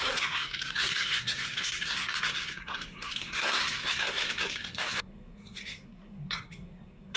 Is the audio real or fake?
fake